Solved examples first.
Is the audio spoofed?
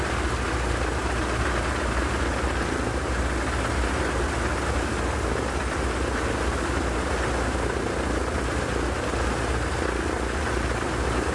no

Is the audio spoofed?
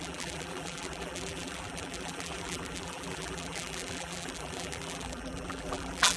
yes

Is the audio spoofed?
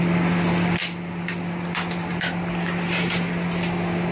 no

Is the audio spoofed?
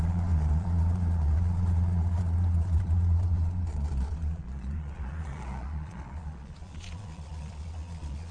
yes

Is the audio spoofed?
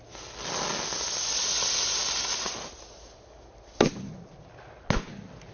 no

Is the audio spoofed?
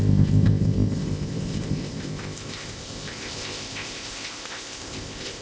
yes